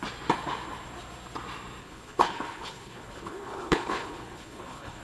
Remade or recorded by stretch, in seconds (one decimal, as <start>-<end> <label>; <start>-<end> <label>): 0.0-1.8 recorded; 1.8-5.0 remade

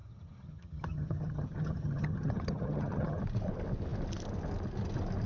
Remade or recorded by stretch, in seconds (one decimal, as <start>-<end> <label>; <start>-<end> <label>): 0.0-3.2 remade; 3.2-5.3 recorded

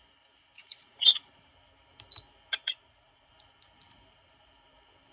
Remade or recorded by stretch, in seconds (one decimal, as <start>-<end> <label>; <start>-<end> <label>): 0.0-0.6 recorded; 0.6-1.5 remade; 1.5-2.6 recorded; 2.6-3.3 remade; 3.3-5.1 recorded